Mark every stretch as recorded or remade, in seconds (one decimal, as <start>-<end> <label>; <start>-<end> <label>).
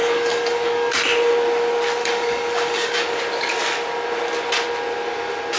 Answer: 0.0-0.9 remade; 0.9-2.0 recorded; 2.0-3.2 remade; 3.2-5.6 recorded